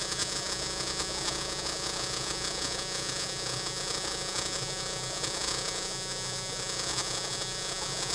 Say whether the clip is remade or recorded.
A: remade